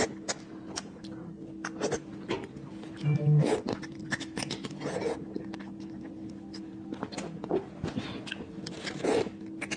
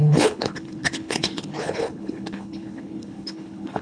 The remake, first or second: second